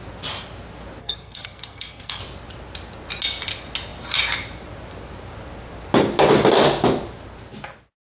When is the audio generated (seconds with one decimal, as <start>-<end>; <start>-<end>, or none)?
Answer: 1.0-2.2